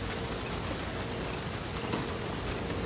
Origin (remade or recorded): recorded